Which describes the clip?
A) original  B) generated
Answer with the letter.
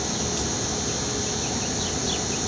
A